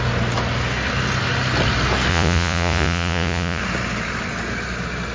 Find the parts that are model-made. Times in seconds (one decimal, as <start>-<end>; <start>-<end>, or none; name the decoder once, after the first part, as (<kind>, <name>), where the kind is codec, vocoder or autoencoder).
2.1-3.6 (vocoder, Vocos)